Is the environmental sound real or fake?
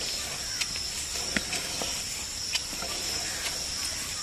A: real